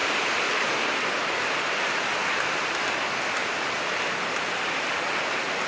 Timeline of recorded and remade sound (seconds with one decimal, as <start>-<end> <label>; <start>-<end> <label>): 0.0-5.7 recorded